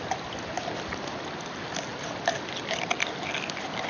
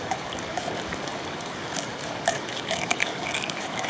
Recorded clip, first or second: first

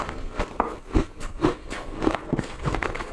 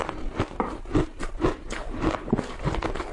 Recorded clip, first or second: second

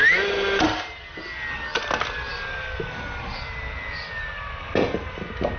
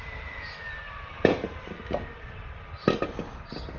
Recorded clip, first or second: first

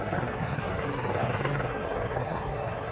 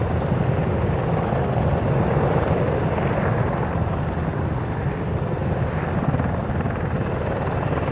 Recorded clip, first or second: second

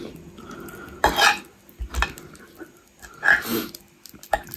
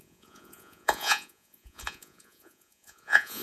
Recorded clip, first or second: first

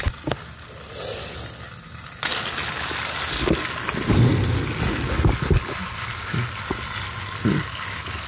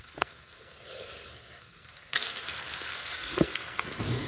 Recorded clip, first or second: first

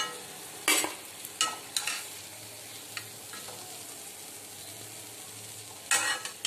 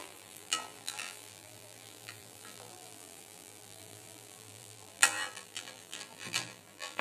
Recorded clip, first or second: first